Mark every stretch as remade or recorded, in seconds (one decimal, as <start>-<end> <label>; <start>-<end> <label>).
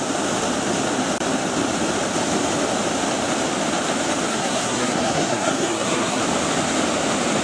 0.0-4.3 recorded; 4.3-6.2 remade; 6.2-7.4 recorded